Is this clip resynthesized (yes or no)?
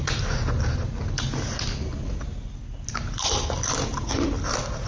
no